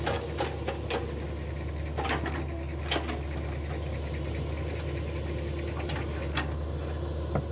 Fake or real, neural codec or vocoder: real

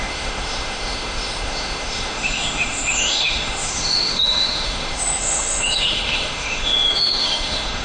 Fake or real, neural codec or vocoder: fake, autoencoder, DAC-VAE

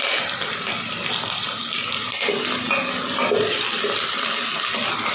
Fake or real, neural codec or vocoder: real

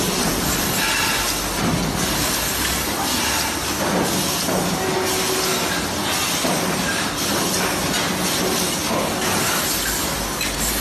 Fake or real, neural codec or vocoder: real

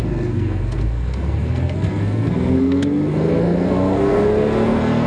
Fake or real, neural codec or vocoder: fake, codec, SNAC